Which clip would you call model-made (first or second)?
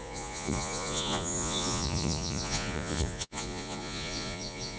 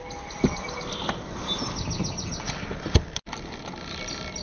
first